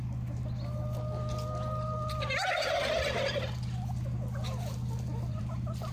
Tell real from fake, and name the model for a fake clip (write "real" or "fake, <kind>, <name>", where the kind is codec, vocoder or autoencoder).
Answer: fake, vocoder, BigVGAN v2